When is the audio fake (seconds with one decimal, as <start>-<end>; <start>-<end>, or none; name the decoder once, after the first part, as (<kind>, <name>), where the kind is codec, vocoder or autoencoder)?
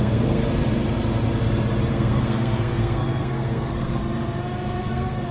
0.0-0.4 (codec, SNAC); 1.9-4.0; 4.8-5.3